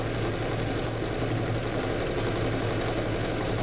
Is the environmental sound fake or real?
real